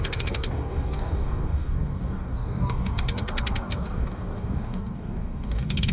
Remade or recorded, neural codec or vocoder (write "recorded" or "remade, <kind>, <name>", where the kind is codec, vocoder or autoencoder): remade, codec, DAC